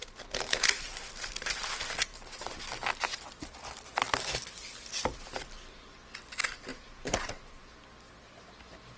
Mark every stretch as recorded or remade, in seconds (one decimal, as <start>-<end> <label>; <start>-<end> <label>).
0.0-9.0 recorded